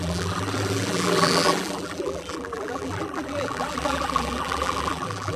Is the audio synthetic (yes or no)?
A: yes